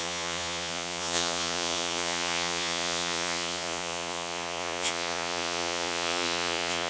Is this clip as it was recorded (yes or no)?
no